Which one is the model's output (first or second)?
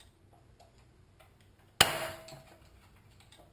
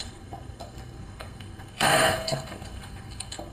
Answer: second